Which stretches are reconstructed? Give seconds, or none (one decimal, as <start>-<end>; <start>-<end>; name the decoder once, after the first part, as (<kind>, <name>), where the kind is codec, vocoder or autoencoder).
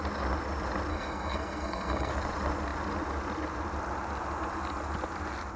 0.9-2.1 (codec, SNAC)